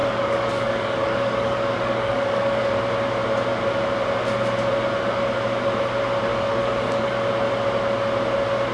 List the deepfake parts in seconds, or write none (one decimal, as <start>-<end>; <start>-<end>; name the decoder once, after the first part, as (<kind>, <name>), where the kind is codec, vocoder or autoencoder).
0.0-2.7 (codec, DAC); 6.3-7.1